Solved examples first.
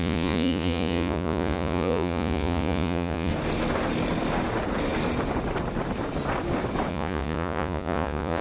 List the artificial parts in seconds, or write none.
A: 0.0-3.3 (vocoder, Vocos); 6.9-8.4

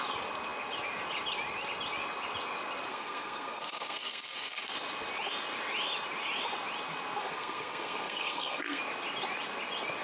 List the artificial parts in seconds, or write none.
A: 2.9-4.6 (codec, SNAC); 7.2-8.8